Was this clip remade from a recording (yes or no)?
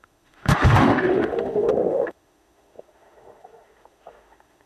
yes